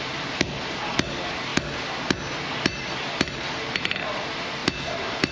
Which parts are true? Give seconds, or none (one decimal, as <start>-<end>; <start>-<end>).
0.0-5.3